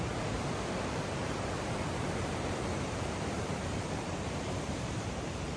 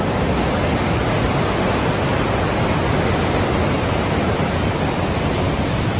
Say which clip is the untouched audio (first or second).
second